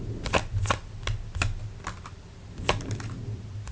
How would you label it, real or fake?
real